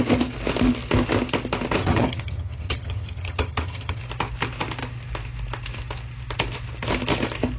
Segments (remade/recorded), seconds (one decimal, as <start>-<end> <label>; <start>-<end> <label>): 0.0-1.8 recorded; 1.8-4.0 remade; 4.0-7.6 recorded